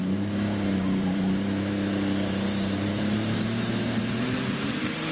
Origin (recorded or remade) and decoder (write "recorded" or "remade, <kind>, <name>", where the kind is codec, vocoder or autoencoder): remade, vocoder, BigVGAN v2